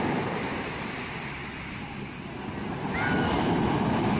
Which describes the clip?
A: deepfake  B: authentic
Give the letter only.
B